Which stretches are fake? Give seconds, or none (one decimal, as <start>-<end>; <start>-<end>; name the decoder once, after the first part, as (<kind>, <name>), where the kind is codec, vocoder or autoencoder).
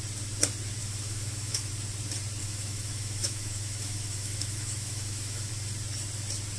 0.8-1.7 (autoencoder, DAC-VAE); 2.4-5.5